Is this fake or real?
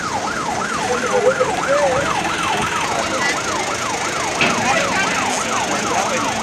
real